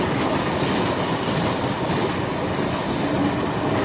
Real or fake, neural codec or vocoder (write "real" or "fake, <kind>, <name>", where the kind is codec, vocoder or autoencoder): real